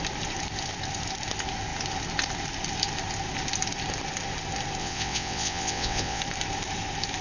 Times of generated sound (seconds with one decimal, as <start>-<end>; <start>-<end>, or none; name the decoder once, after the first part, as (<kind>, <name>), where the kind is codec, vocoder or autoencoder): 4.8-6.2 (vocoder, WaveNeXt)